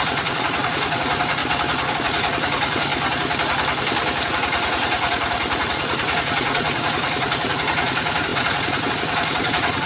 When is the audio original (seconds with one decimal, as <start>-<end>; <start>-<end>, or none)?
1.4-1.9; 2.9-4.3